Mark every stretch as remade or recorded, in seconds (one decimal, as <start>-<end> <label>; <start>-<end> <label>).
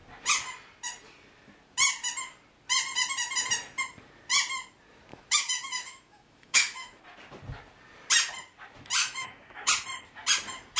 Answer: 0.0-5.1 recorded; 5.1-7.0 remade; 7.0-9.0 recorded; 9.0-9.7 remade; 9.7-10.8 recorded